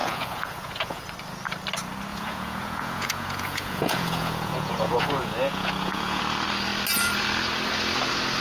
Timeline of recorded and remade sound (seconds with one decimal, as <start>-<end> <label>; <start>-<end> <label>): 0.0-1.0 remade; 1.0-2.1 recorded; 2.1-6.2 remade; 6.2-8.4 recorded